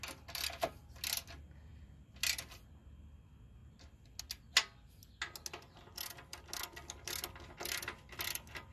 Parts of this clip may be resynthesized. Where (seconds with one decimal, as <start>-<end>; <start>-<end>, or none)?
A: none